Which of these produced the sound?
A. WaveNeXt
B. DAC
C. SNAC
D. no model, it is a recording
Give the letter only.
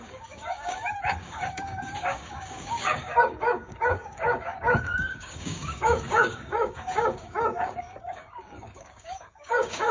B